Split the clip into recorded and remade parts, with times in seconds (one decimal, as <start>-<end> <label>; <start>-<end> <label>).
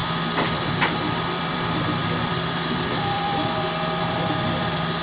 0.0-0.7 recorded; 0.7-5.0 remade